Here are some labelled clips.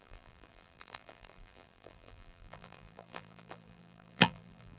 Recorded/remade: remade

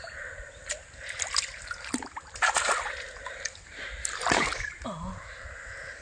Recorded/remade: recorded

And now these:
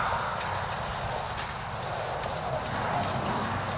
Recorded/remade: recorded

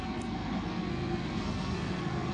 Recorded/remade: remade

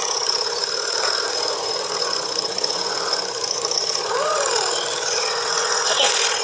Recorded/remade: remade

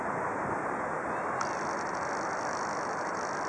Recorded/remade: recorded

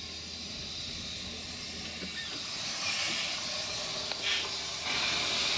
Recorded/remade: recorded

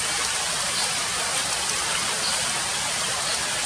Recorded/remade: recorded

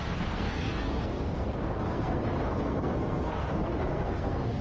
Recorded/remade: remade